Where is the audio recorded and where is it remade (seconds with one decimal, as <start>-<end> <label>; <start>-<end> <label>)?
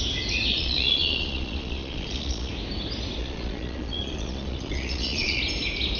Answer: 0.0-0.5 recorded; 0.5-2.5 remade; 2.5-3.2 recorded; 3.2-5.4 remade; 5.4-6.0 recorded